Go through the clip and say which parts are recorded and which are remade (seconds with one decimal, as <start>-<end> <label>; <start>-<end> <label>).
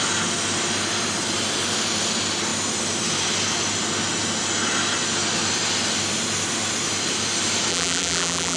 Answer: 0.0-7.7 recorded; 7.7-8.6 remade